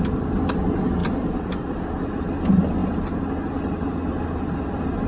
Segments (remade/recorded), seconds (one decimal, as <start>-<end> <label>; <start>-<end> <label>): 0.0-5.1 recorded